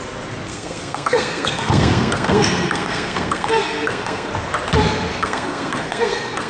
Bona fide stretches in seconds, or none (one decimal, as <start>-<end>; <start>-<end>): 0.0-0.5; 4.3-5.1